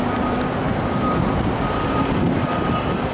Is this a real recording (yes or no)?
yes